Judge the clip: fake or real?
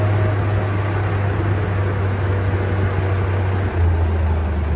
real